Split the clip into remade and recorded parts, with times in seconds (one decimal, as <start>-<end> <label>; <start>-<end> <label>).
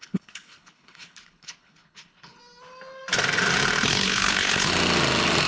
0.0-2.4 remade; 2.4-3.9 recorded; 3.9-4.7 remade; 4.7-5.5 recorded